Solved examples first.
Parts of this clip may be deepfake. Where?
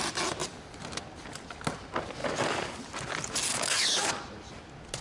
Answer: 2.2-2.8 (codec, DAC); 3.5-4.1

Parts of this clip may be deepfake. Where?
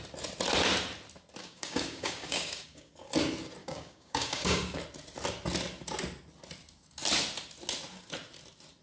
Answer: 1.4-2.9 (codec, DAC); 3.6-4.8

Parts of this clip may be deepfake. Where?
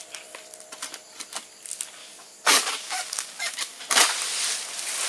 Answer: 2.0-3.8 (codec, DAC)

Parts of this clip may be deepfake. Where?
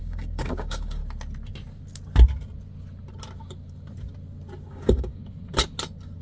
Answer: 0.0-1.0 (codec, DAC); 4.7-5.2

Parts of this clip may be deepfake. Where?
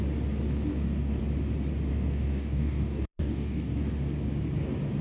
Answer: 0.7-1.2 (codec, DAC); 1.9-3.8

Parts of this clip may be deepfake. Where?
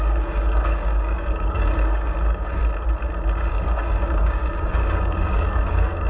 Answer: 0.0-2.6 (codec, DAC); 3.5-6.1